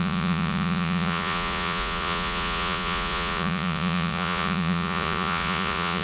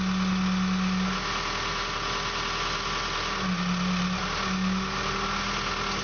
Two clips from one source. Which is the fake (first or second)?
first